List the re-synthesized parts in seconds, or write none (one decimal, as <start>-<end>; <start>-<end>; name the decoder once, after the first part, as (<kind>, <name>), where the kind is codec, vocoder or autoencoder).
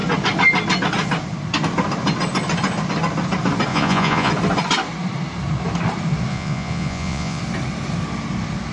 3.7-4.3 (vocoder, Vocos); 6.3-7.4